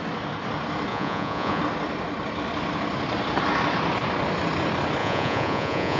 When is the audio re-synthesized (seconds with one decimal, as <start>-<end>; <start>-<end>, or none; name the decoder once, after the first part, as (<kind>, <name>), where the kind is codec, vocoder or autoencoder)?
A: 0.9-1.6 (vocoder, Vocos); 5.0-6.0

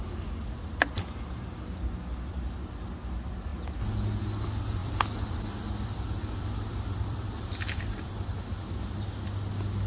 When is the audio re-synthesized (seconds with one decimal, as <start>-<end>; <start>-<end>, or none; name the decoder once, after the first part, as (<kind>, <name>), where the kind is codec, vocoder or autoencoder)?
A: 4.8-8.4 (vocoder, BigVGAN v2)

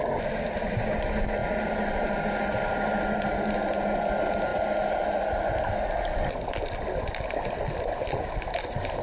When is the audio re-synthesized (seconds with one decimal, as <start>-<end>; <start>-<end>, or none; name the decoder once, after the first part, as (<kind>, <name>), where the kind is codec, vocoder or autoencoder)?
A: none

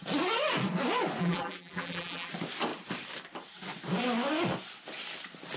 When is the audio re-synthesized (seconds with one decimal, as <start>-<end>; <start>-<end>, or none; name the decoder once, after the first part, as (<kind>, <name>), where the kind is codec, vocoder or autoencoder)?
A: 1.2-2.3 (vocoder, BigVGAN v2)

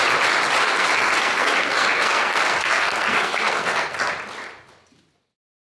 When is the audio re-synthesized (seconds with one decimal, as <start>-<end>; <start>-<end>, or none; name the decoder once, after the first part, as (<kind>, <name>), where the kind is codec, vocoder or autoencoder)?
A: 0.6-4.1 (codec, SNAC)

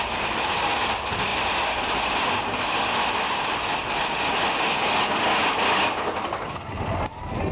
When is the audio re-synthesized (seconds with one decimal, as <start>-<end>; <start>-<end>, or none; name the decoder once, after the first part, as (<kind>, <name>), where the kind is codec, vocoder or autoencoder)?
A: none

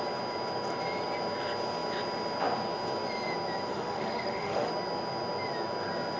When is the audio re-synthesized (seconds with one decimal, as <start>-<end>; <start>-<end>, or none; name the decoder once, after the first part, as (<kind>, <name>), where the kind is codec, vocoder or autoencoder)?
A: 3.7-4.7 (autoencoder, DAC-VAE)